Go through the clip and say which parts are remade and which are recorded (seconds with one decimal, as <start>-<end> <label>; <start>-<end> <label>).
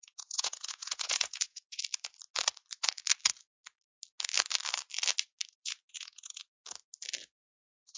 0.0-1.8 remade; 1.8-5.5 recorded; 5.5-6.4 remade; 6.4-7.2 recorded; 7.2-8.0 remade